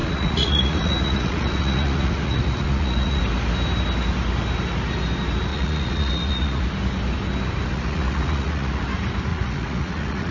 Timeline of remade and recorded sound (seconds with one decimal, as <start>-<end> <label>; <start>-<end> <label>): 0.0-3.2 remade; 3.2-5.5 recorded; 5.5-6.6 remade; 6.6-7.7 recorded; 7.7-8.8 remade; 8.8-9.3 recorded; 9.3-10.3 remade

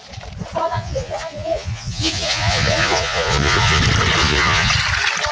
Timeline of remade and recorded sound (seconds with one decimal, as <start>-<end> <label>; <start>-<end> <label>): 0.0-0.6 recorded; 0.6-3.8 remade; 3.8-4.2 recorded; 4.2-4.7 remade; 4.7-5.3 recorded

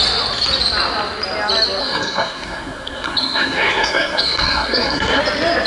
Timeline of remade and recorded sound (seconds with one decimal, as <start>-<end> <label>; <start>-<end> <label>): 0.0-1.8 recorded; 1.8-5.2 remade; 5.2-5.7 recorded

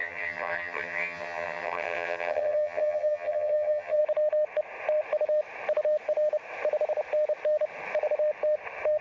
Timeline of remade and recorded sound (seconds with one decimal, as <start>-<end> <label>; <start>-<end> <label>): 0.0-4.0 remade; 4.0-9.0 recorded

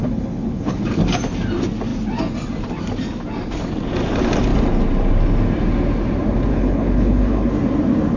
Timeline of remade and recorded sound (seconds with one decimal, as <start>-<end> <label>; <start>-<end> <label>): 0.0-0.8 remade; 0.8-6.5 recorded; 6.5-7.5 remade; 7.5-8.2 recorded

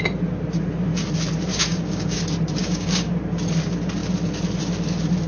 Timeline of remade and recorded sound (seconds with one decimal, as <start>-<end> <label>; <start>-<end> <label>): 0.0-1.5 recorded; 1.5-2.2 remade; 2.2-2.6 recorded; 2.6-3.1 remade; 3.1-5.3 recorded